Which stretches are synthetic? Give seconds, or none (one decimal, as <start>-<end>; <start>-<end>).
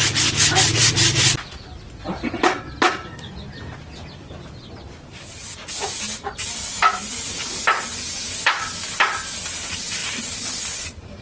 none